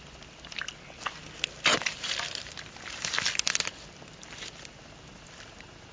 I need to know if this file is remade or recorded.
recorded